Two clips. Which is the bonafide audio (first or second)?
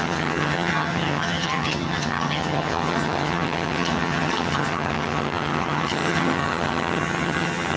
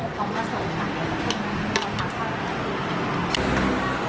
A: second